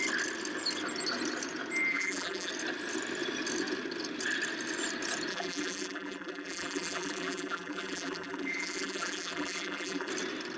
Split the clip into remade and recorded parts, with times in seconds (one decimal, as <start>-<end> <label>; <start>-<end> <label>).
0.0-1.9 recorded; 1.9-2.5 remade; 2.5-5.3 recorded; 5.3-10.1 remade; 10.1-10.6 recorded